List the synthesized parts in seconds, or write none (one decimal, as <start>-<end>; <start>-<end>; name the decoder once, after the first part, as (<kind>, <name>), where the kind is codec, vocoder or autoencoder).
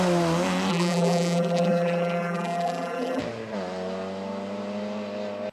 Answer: 0.7-3.2 (vocoder, BigVGAN v2)